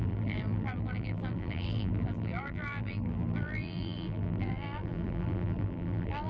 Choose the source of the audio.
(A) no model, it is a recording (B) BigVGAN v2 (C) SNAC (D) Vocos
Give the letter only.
B